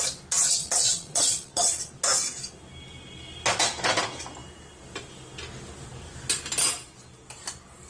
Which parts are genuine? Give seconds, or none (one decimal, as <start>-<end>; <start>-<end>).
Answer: 0.0-0.6; 1.9-7.9